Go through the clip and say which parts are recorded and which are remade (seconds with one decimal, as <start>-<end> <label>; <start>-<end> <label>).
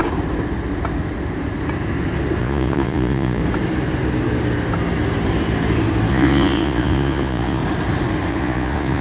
0.0-2.4 recorded; 2.4-3.4 remade; 3.4-6.1 recorded; 6.1-7.6 remade; 7.6-8.3 recorded; 8.3-9.0 remade